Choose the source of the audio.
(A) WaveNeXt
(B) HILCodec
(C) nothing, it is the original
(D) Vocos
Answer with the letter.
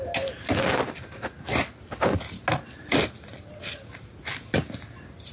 C